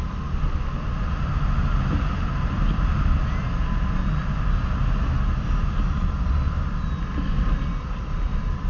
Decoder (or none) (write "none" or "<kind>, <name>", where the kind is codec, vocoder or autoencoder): none